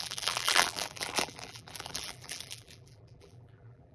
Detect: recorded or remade remade